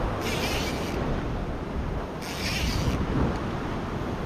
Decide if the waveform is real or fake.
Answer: real